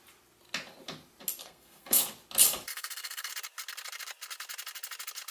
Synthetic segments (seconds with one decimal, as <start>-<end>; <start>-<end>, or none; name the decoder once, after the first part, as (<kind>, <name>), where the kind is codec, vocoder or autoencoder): 1.4-2.0 (codec, SNAC); 2.7-3.3